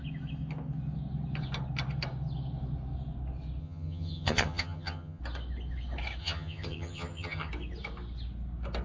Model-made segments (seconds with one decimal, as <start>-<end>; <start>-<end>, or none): 3.6-5.2; 6.2-7.5